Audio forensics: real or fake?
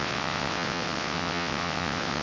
fake